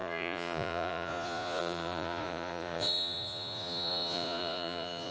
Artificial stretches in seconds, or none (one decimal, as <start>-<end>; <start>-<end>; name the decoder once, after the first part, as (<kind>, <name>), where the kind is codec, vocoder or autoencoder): 0.0-5.1 (vocoder, Vocos)

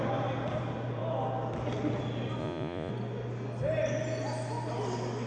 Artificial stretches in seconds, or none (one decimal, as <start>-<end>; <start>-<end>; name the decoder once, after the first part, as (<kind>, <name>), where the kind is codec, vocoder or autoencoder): 2.4-2.9 (vocoder, Vocos)

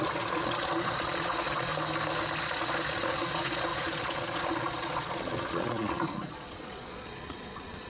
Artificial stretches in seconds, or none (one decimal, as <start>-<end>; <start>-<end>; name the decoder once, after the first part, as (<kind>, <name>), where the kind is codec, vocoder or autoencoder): 0.0-1.7 (vocoder, Vocos); 2.4-7.9

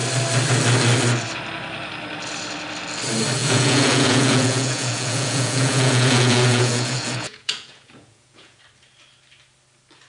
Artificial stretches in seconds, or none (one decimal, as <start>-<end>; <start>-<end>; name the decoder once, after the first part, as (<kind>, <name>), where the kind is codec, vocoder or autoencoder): 3.4-8.6 (vocoder, Vocos)

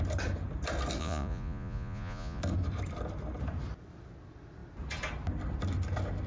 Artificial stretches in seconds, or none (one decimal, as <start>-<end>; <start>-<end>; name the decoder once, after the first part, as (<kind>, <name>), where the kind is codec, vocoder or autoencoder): 1.0-2.4 (vocoder, Vocos)

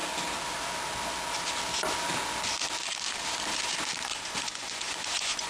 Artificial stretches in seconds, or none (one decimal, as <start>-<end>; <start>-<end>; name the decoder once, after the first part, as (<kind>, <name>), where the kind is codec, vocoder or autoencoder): 4.1-5.5 (vocoder, Vocos)

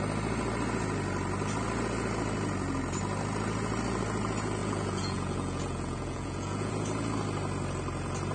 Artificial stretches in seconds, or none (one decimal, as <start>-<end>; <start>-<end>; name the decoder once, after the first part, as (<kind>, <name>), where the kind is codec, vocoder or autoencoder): 4.6-6.7 (vocoder, Vocos)

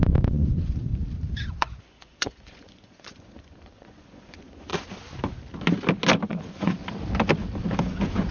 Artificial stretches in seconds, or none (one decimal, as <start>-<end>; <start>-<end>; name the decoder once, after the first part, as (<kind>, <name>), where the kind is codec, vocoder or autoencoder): 0.0-0.9 (vocoder, Vocos); 1.5-4.7; 6.3-6.8; 7.8-8.3